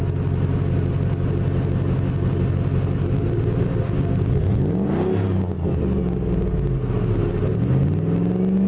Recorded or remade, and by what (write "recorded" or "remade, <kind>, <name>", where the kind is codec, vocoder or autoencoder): recorded